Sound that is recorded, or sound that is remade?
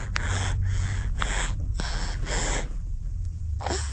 remade